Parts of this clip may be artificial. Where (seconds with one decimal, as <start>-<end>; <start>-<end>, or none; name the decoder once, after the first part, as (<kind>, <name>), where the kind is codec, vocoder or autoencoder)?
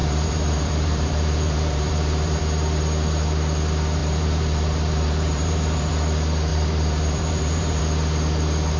0.0-2.4 (vocoder, BigVGAN v2); 4.0-5.9; 6.5-7.8